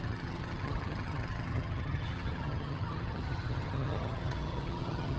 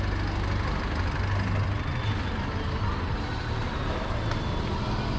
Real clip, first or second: second